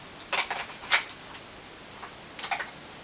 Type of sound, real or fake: real